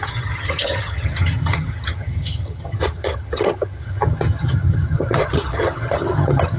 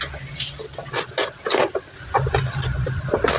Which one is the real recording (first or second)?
second